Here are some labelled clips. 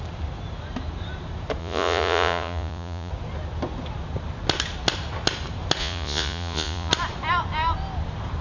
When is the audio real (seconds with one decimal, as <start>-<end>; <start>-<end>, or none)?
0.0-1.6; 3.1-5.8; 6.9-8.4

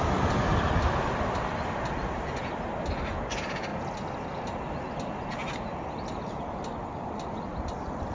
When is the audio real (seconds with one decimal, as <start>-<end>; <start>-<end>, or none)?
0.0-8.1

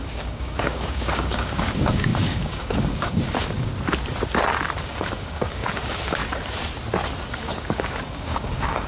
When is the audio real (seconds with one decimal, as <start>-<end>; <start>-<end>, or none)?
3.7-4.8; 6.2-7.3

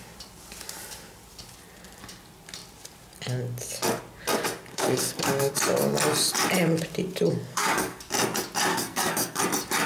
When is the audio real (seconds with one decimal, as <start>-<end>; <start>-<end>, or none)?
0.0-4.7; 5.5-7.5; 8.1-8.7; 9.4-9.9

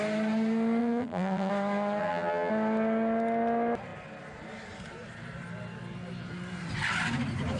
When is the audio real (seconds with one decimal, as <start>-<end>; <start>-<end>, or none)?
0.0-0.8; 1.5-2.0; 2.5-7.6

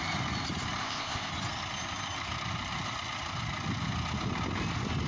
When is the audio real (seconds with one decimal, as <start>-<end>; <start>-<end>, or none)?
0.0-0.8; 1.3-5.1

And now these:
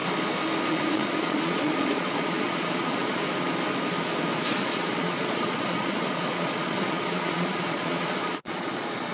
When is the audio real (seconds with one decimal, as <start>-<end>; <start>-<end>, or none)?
0.0-0.7; 3.2-4.5